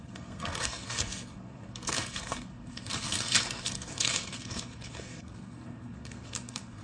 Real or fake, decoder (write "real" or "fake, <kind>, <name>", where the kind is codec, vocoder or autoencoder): fake, codec, SNAC